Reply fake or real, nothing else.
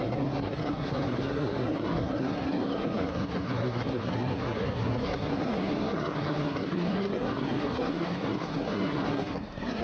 fake